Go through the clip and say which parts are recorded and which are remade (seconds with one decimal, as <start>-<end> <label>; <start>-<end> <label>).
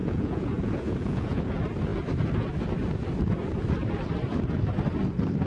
0.0-1.5 remade; 1.5-5.5 recorded